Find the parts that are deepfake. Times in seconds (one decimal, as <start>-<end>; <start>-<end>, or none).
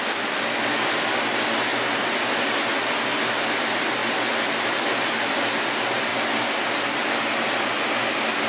none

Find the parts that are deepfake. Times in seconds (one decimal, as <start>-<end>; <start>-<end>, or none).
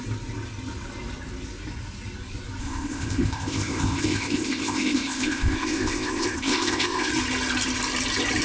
2.6-7.1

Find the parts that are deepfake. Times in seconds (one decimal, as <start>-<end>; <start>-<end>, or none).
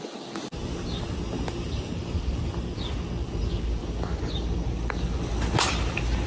none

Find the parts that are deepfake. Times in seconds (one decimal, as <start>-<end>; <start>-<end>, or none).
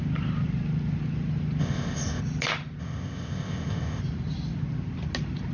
1.6-2.2; 2.8-4.0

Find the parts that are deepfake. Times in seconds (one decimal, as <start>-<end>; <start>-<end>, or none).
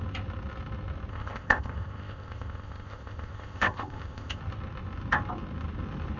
1.1-4.4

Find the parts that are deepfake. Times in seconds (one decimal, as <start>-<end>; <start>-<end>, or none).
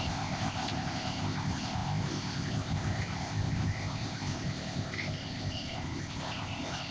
0.0-6.9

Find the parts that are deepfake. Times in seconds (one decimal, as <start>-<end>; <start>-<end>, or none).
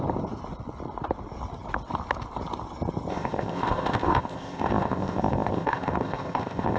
3.1-6.8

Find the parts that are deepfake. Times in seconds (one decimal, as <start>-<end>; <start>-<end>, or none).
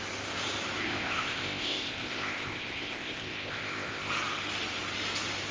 0.8-4.1